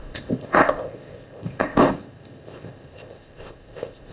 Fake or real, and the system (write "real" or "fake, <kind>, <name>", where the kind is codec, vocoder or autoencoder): fake, codec, ZipCodec